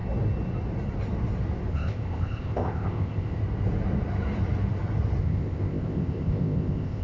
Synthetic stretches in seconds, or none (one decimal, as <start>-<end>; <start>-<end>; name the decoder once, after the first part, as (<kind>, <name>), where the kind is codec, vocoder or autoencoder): 1.7-3.4 (codec, ZipCodec); 5.2-7.0